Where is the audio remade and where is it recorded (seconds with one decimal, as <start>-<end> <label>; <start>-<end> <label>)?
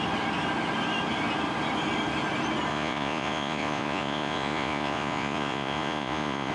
0.0-2.7 recorded; 2.7-6.5 remade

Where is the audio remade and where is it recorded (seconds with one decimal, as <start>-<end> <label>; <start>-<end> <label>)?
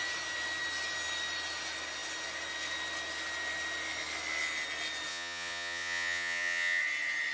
0.0-5.1 recorded; 5.1-6.8 remade; 6.8-7.3 recorded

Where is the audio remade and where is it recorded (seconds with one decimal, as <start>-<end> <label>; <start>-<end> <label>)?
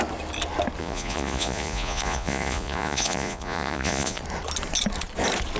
0.0-0.8 recorded; 0.8-4.2 remade; 4.2-5.6 recorded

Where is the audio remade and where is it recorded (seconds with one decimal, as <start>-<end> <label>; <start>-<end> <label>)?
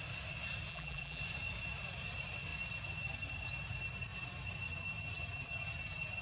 0.0-0.7 recorded; 0.7-1.2 remade; 1.2-6.2 recorded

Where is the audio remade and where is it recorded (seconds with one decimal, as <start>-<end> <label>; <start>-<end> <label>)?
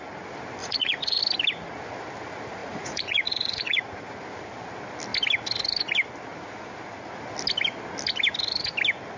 0.0-0.6 recorded; 0.6-1.2 remade; 1.2-2.6 recorded; 2.6-3.8 remade; 3.8-9.2 recorded